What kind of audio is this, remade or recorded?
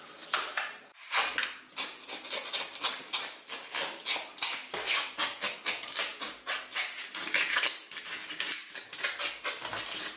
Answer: recorded